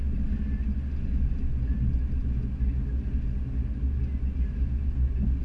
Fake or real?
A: real